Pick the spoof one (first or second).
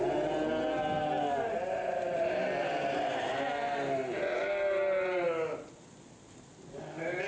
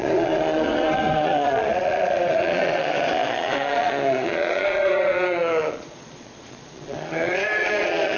second